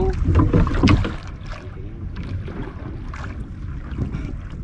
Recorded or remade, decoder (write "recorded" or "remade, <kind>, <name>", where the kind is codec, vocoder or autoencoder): recorded